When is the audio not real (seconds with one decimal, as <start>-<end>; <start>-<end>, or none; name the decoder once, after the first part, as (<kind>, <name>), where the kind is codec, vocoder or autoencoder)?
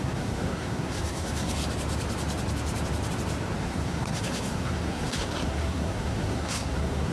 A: 0.0-1.6 (codec, SNAC); 3.6-7.1